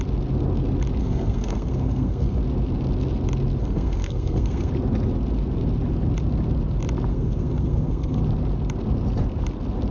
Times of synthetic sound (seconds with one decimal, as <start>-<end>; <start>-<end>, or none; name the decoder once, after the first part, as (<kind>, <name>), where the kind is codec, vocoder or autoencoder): 1.0-2.4 (codec, SNAC); 3.6-4.7; 7.1-8.2